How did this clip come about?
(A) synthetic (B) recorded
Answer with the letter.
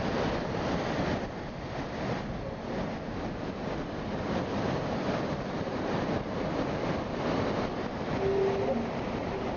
B